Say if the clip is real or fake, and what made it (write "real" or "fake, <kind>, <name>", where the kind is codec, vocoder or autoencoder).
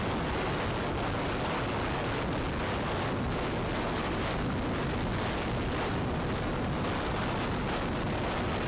real